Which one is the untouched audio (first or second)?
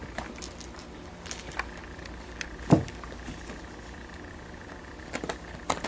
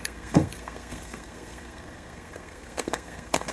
first